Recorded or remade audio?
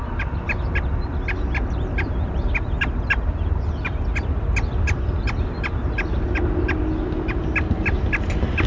recorded